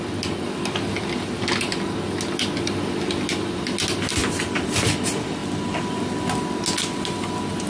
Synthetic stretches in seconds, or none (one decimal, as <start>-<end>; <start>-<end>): 4.2-4.9